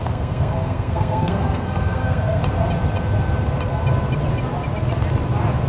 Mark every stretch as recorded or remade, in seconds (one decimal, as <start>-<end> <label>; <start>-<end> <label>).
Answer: 0.0-2.4 remade; 2.4-5.7 recorded